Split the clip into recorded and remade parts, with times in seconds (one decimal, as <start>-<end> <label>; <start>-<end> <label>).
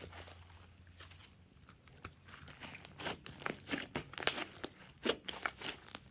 0.0-1.2 recorded; 1.2-4.9 remade; 4.9-6.1 recorded